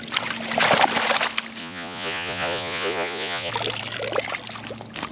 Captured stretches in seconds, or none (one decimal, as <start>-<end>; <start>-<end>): 0.0-1.6; 3.5-5.1